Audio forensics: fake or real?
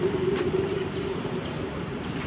real